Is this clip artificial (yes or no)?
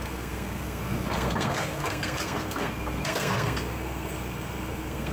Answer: yes